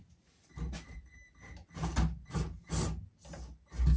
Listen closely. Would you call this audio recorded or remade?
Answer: recorded